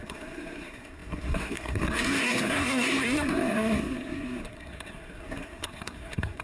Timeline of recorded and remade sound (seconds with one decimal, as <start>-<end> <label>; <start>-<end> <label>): 0.0-6.4 remade